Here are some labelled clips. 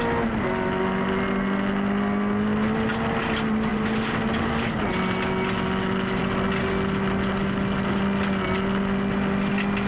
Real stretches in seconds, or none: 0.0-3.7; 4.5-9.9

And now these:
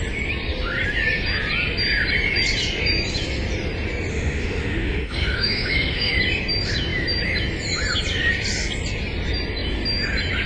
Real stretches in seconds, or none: 0.0-4.1; 6.2-10.5